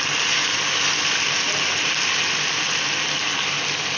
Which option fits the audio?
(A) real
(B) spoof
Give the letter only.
A